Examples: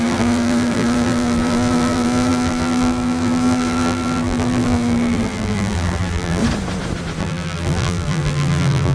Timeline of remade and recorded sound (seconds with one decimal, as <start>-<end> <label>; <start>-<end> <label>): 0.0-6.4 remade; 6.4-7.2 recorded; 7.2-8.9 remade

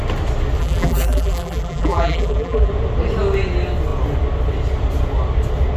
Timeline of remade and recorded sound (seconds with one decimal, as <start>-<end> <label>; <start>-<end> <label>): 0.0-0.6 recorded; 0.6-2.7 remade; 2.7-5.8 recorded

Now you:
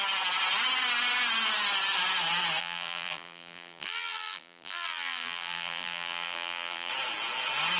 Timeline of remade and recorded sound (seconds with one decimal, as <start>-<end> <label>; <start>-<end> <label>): 0.0-2.6 recorded; 2.6-6.9 remade; 6.9-7.8 recorded